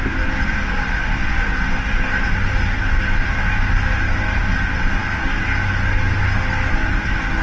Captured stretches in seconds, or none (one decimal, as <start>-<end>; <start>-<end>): 0.0-7.4